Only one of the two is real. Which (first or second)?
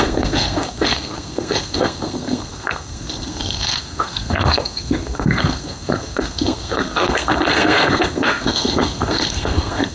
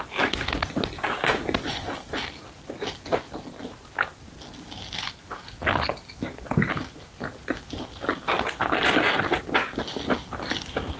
second